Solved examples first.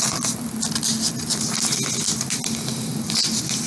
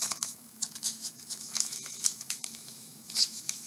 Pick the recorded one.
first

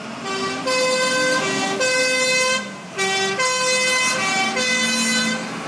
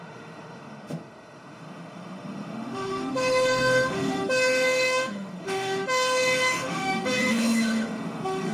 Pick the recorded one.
first